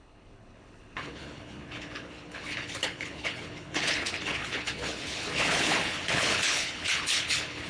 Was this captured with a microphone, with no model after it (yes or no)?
no